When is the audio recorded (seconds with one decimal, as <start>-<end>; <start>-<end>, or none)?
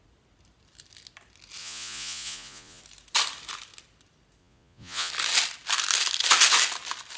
0.0-1.6; 2.8-4.4; 5.1-7.2